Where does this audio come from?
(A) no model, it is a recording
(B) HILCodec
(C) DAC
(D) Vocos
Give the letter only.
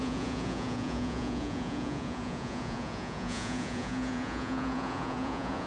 D